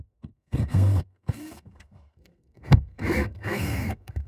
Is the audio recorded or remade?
remade